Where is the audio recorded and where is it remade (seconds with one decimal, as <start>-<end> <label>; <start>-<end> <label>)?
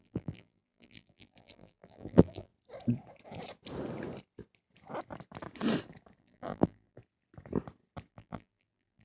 0.0-2.5 remade; 2.5-6.2 recorded; 6.2-7.0 remade; 7.0-8.1 recorded; 8.1-9.0 remade